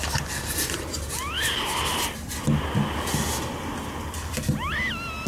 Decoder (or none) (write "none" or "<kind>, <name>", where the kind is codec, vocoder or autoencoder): none